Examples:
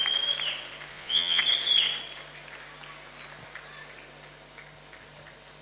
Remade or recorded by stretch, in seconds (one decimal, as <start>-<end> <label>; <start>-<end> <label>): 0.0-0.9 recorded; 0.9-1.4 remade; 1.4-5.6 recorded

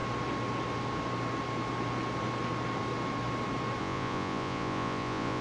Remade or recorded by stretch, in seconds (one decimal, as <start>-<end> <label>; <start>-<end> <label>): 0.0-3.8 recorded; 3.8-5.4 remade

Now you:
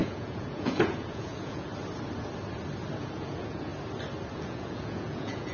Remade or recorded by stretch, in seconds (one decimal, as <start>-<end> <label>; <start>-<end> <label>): 0.0-1.7 remade; 1.7-3.0 recorded; 3.0-3.7 remade; 3.7-4.3 recorded; 4.3-5.5 remade

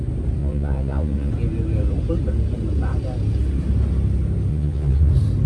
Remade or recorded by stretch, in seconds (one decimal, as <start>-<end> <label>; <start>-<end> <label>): 0.0-0.4 recorded; 0.4-1.3 remade; 1.3-4.5 recorded; 4.5-5.1 remade; 5.1-5.5 recorded